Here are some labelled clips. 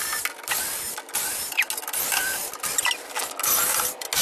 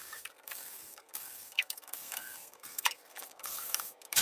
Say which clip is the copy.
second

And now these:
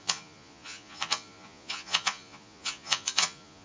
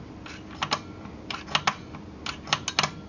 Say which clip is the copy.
first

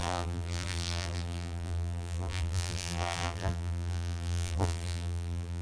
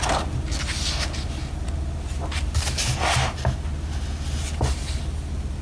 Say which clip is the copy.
first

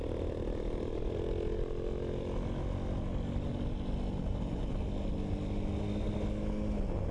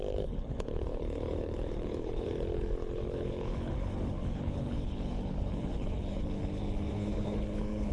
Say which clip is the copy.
second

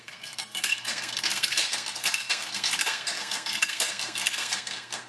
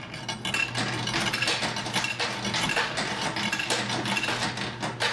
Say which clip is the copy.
first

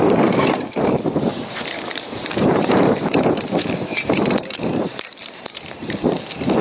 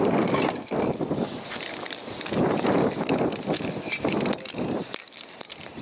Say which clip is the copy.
first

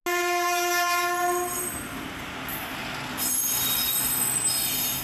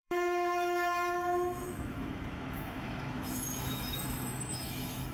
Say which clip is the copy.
second